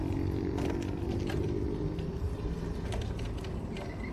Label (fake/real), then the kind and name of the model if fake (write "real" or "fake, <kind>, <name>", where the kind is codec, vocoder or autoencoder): real